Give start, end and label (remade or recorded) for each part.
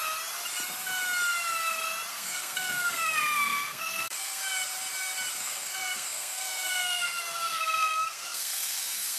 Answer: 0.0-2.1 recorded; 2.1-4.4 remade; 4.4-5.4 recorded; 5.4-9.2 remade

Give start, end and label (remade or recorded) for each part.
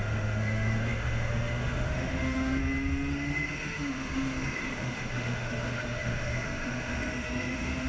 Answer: 0.0-2.6 remade; 2.6-3.1 recorded; 3.1-7.9 remade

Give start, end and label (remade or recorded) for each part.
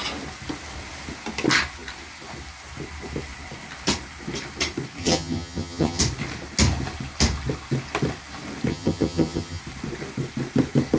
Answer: 0.0-5.0 recorded; 5.0-6.0 remade; 6.0-8.7 recorded; 8.7-9.6 remade; 9.6-11.0 recorded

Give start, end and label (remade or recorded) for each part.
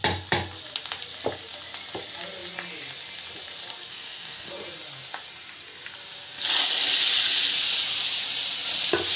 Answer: 0.0-3.9 recorded; 3.9-4.5 remade; 4.5-9.2 recorded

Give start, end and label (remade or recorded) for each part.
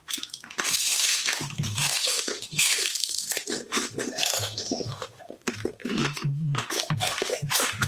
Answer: 0.0-7.9 remade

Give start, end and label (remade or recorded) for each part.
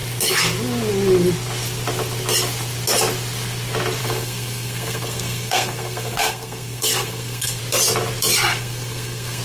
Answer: 0.0-4.0 recorded; 4.0-7.6 remade; 7.6-8.5 recorded; 8.5-9.4 remade